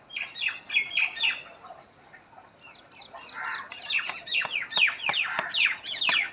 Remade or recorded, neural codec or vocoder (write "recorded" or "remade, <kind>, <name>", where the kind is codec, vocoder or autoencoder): recorded